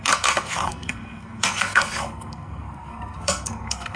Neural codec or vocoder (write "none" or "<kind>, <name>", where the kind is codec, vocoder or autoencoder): codec, SNAC